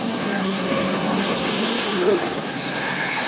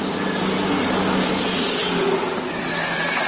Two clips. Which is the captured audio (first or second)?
second